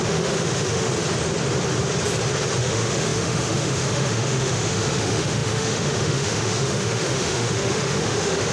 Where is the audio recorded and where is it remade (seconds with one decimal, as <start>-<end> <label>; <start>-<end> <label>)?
0.0-0.9 remade; 0.9-2.6 recorded; 2.6-8.5 remade